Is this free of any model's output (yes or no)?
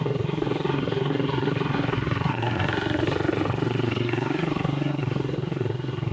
no